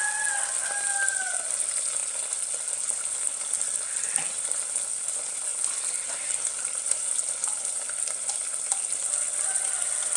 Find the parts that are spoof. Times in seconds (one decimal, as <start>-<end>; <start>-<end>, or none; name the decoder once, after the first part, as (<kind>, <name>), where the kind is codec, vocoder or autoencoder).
5.5-6.1 (vocoder, BigVGAN v2)